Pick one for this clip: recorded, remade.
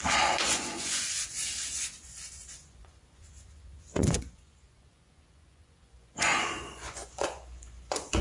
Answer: remade